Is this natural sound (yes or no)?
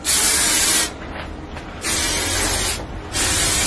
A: yes